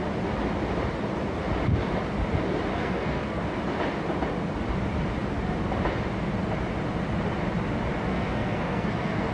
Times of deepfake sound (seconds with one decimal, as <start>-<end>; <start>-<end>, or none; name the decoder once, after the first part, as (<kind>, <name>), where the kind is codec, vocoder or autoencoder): 2.7-3.4 (codec, SNAC); 8.1-9.3